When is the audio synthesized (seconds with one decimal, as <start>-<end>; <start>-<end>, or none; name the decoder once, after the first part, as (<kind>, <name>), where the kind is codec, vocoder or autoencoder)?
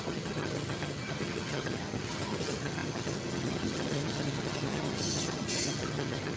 0.0-6.4 (vocoder, HiFi-GAN)